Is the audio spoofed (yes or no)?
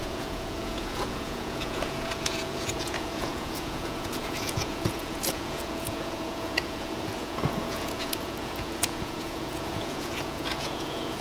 yes